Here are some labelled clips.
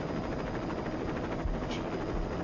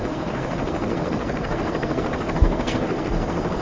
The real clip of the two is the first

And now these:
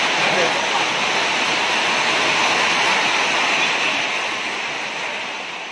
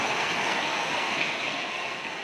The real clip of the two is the first